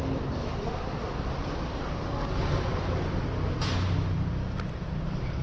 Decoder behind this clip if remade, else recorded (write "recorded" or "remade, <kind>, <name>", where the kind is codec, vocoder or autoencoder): recorded